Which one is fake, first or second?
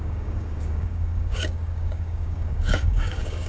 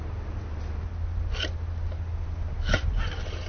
first